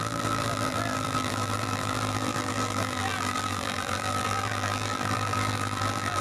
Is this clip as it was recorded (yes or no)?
no